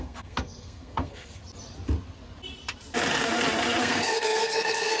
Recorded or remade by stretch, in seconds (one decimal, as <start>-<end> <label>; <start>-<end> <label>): 0.0-1.4 remade; 1.4-3.8 recorded; 3.8-5.0 remade